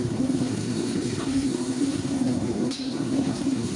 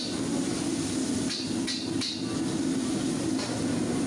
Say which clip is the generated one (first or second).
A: first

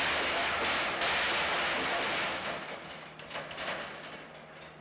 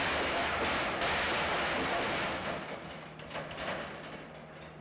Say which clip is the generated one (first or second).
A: second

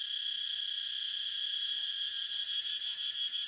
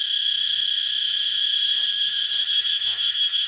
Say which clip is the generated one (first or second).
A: second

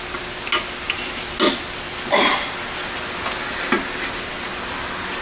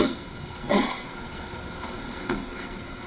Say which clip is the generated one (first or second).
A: second